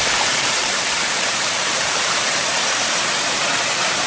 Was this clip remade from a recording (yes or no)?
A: yes